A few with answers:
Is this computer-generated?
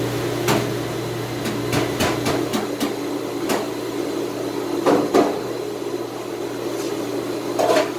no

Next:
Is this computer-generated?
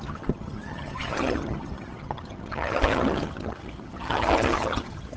yes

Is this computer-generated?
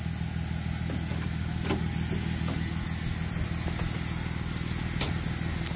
no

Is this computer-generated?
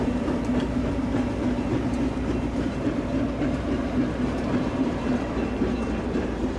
yes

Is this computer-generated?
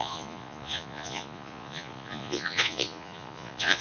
yes